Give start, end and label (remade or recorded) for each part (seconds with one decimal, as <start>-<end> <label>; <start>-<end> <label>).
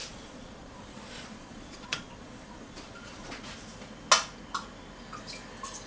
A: 0.0-3.5 remade; 3.5-5.9 recorded